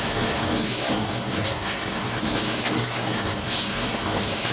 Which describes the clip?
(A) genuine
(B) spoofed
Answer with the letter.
B